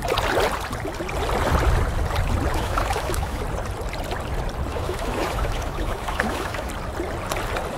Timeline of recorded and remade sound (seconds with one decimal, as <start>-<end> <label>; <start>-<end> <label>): 0.0-2.5 recorded; 2.5-3.4 remade; 3.4-4.7 recorded; 4.7-6.7 remade; 6.7-7.8 recorded